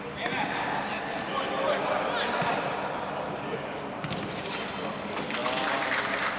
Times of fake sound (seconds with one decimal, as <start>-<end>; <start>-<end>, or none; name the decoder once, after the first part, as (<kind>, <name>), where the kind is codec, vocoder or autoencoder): none